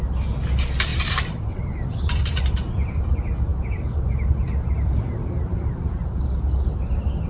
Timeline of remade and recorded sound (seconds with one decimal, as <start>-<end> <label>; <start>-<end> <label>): 0.0-0.9 recorded; 0.9-3.0 remade; 3.0-3.5 recorded; 3.5-6.2 remade; 6.2-7.3 recorded